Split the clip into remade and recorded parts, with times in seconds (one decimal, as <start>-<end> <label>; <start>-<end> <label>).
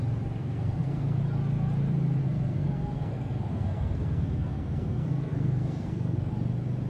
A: 0.0-0.4 recorded; 0.4-1.2 remade; 1.2-2.2 recorded; 2.2-6.3 remade; 6.3-6.9 recorded